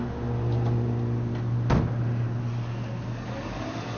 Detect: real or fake real